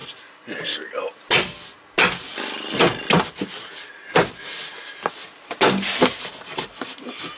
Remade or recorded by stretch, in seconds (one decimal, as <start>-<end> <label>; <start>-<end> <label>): 0.0-7.4 recorded